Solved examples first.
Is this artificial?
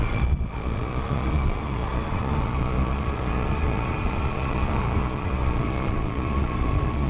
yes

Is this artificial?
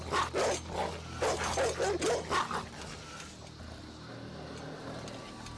no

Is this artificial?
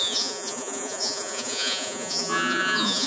yes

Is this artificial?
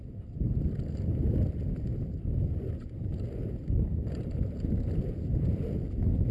no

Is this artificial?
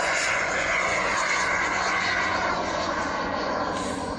yes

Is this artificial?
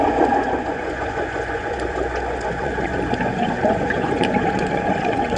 yes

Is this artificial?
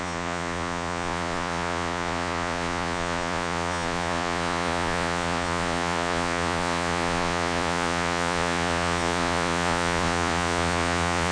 yes